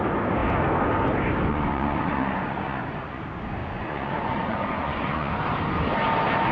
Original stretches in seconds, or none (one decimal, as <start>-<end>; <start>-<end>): 0.0-1.5; 3.2-3.6; 5.3-6.5